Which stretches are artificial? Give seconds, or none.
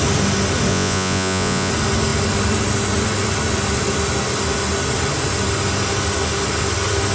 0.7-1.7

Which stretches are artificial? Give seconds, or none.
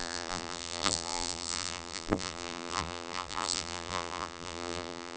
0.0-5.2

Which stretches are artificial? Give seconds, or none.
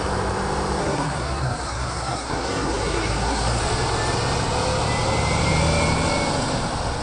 0.8-3.6